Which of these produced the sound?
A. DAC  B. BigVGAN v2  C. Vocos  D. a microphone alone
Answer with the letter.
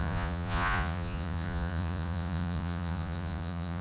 C